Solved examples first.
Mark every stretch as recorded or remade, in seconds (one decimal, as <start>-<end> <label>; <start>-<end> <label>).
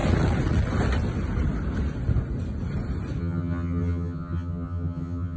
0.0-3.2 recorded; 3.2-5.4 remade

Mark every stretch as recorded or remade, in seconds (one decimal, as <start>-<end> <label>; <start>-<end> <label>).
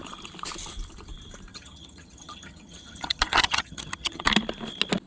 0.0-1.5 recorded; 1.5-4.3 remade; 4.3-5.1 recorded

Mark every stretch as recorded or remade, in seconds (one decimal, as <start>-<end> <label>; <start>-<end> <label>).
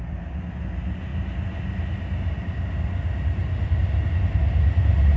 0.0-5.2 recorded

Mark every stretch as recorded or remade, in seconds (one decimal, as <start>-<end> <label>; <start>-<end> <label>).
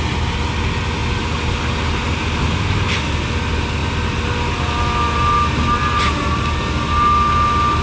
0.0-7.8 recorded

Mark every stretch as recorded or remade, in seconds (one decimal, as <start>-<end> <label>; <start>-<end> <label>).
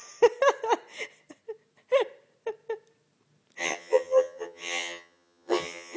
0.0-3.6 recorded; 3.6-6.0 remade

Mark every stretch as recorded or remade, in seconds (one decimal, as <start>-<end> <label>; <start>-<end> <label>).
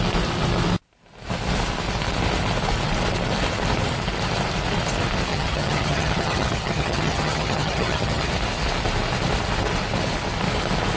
0.0-5.3 recorded; 5.3-8.3 remade; 8.3-11.0 recorded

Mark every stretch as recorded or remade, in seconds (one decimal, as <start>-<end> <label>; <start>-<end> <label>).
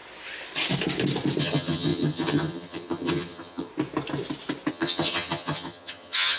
0.0-1.4 recorded; 1.4-3.7 remade; 3.7-4.7 recorded; 4.7-6.4 remade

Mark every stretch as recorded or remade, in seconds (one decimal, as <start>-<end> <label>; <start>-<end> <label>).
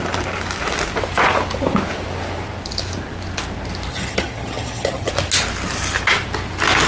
0.0-3.9 recorded; 3.9-5.1 remade; 5.1-6.9 recorded